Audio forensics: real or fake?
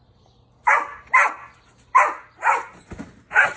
real